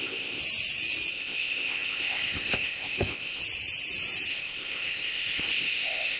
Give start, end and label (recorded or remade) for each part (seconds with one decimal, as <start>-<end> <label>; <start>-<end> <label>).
0.0-0.4 remade; 0.4-1.1 recorded; 1.1-3.4 remade; 3.4-4.3 recorded; 4.3-6.2 remade